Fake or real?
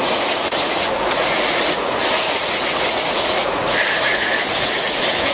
fake